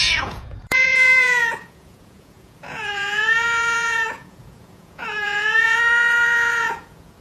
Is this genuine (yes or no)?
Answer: no